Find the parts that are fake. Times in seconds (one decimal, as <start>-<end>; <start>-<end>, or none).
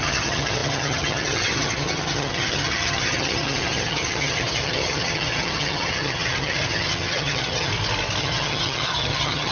0.0-7.7; 8.2-9.5